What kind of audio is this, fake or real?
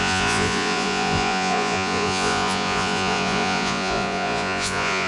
fake